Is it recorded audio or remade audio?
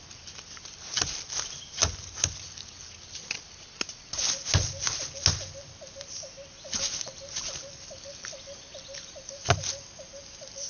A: recorded